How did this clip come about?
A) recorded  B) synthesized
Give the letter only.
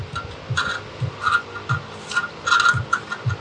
A